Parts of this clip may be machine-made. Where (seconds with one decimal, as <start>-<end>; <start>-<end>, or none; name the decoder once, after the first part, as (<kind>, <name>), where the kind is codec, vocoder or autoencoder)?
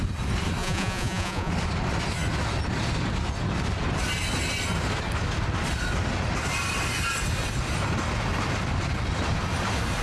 0.6-1.5 (vocoder, Vocos)